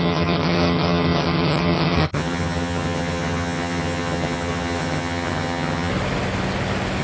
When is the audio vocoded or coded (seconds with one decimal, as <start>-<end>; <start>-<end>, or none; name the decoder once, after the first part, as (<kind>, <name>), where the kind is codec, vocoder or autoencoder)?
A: 0.0-5.9 (vocoder, HiFi-GAN)